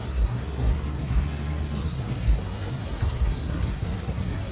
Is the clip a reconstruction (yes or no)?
yes